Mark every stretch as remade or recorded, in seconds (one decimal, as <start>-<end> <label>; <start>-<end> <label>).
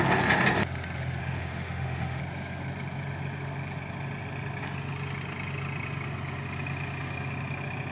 0.0-1.2 recorded; 1.2-2.2 remade; 2.2-7.9 recorded